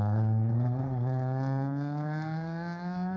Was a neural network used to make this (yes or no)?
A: yes